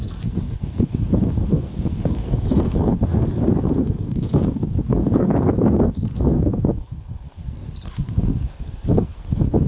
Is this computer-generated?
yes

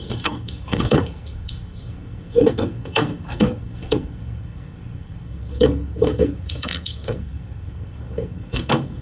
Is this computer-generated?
yes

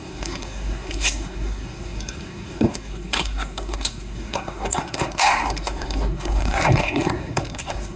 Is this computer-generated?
yes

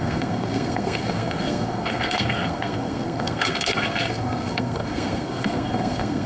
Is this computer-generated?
yes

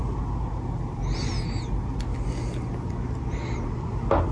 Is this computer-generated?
no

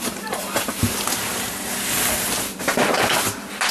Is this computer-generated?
no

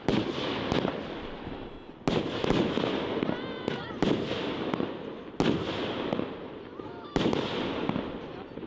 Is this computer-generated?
no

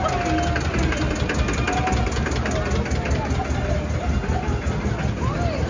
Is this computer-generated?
no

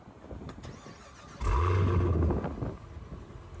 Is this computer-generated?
no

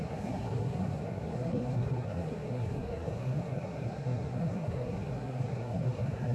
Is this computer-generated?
yes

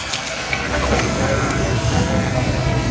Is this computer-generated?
yes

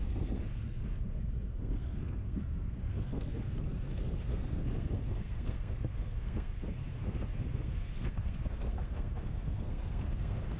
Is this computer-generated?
yes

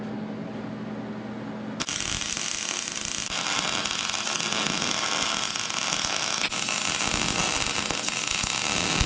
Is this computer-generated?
no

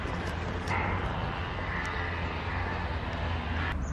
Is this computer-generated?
no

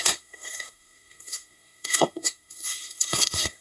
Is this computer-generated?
yes